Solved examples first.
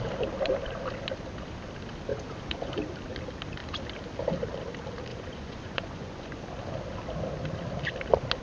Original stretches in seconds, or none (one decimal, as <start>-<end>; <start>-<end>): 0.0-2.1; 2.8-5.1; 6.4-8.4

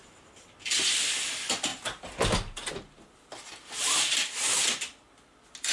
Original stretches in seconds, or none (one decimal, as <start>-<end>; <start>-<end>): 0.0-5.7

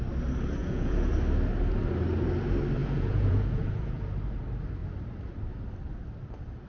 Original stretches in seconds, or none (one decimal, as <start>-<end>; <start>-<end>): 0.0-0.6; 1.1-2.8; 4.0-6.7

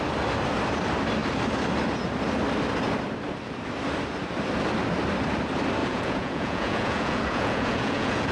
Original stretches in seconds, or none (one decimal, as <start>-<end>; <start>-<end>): 0.0-5.8

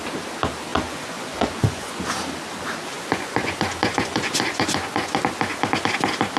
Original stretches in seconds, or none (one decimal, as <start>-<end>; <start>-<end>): 0.0-0.7; 2.0-2.9; 5.2-6.4

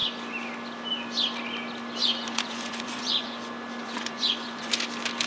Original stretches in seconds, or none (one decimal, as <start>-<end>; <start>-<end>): 0.0-2.0; 3.4-3.8; 4.7-5.3

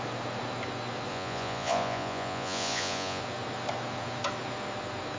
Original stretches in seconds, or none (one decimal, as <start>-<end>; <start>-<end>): 0.0-1.1; 3.2-5.2

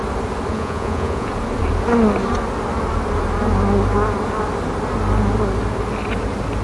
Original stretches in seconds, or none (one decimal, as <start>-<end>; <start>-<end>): 0.0-0.5; 1.3-6.6